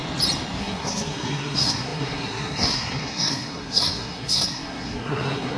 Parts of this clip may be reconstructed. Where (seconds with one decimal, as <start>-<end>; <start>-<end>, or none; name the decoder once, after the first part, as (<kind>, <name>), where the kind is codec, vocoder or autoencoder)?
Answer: 0.6-5.6 (codec, SNAC)